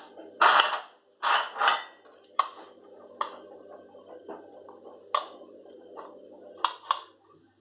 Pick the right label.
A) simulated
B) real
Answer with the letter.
B